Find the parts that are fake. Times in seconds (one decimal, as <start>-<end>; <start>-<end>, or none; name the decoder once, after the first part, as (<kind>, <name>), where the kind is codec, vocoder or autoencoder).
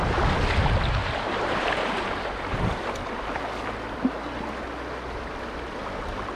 1.0-2.2 (vocoder, BigVGAN v2)